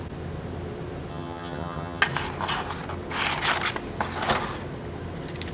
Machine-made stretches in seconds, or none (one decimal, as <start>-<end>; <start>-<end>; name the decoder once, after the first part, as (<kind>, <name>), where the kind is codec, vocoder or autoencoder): 1.1-2.0 (vocoder, HiFi-GAN)